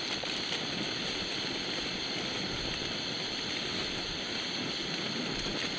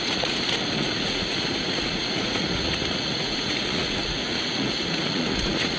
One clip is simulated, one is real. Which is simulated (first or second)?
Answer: second